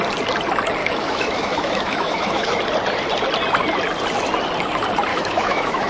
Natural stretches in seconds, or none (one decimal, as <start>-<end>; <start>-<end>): 0.0-0.8; 2.6-5.1